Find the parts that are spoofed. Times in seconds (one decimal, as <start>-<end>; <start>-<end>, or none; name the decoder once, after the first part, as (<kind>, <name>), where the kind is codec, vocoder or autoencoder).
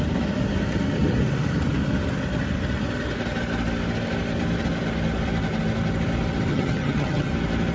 6.5-7.3 (vocoder, HiFi-GAN)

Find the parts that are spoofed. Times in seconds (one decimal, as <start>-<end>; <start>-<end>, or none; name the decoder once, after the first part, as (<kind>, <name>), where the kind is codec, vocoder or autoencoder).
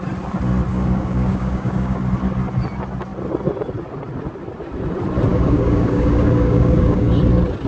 0.7-2.0 (codec, DAC); 5.3-7.1